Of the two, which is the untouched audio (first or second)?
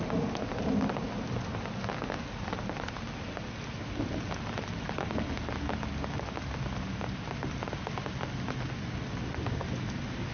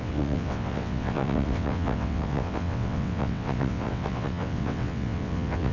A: first